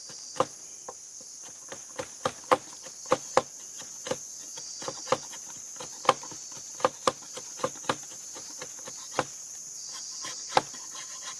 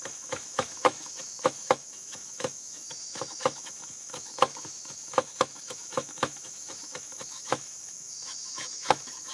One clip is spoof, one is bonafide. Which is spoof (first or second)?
second